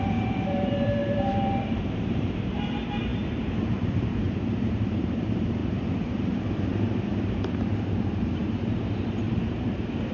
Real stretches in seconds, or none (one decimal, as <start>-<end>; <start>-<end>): none